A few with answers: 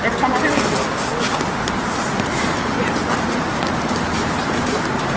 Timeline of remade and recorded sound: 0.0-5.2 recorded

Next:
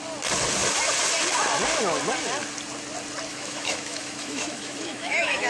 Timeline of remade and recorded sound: 0.0-3.3 recorded; 3.3-5.5 remade